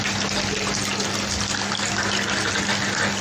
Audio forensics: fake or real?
real